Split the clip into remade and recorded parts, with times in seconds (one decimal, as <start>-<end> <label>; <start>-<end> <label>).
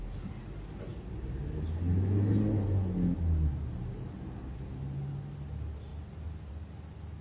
0.0-7.2 recorded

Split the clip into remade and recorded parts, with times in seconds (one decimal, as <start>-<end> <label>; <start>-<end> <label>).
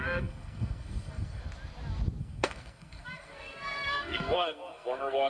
0.0-1.4 remade; 1.4-2.2 recorded; 2.2-5.3 remade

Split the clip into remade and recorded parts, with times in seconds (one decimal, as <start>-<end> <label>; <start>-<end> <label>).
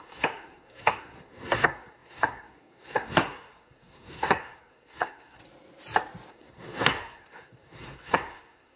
0.0-5.4 remade; 5.4-6.3 recorded; 6.3-8.8 remade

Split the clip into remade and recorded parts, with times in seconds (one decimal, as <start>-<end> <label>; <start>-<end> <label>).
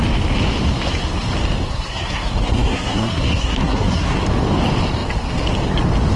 0.0-1.7 recorded; 1.7-4.2 remade; 4.2-6.2 recorded